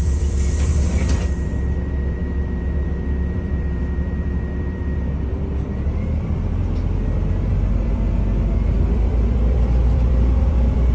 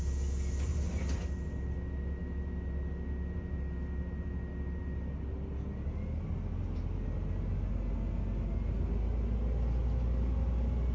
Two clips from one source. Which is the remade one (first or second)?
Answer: first